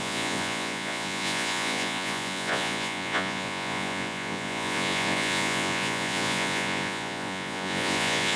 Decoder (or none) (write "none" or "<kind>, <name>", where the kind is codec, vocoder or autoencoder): vocoder, Vocos